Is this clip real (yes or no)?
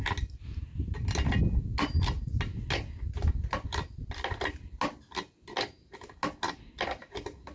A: yes